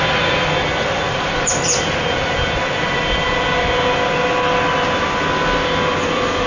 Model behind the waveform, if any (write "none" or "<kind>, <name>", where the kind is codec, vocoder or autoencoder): none